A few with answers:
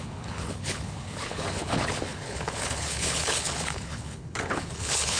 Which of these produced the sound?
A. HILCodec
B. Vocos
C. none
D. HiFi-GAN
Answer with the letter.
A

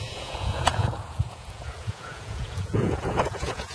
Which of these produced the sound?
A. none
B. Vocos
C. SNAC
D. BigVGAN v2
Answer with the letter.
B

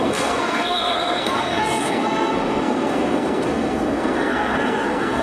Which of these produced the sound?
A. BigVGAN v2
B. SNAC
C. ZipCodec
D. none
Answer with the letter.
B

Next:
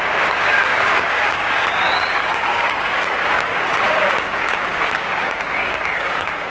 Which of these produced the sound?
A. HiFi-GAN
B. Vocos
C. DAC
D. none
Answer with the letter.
C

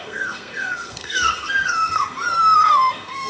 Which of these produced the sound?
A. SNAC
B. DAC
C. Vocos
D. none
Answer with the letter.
A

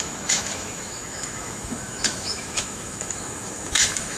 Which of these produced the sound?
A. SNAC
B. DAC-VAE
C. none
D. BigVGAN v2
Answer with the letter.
B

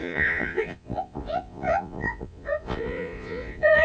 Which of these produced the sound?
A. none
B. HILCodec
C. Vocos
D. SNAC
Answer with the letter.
C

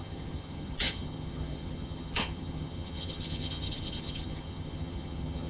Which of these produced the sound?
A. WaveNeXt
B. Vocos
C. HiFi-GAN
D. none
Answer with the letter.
C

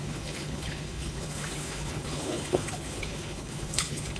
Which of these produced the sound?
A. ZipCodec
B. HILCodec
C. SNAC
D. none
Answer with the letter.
B